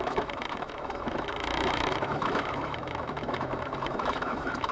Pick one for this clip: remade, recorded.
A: remade